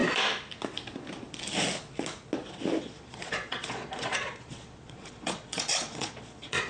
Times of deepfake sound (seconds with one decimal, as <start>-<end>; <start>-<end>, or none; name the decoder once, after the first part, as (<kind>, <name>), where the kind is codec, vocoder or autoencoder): 2.8-6.7 (vocoder, Vocos)